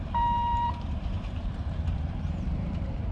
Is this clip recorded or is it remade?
remade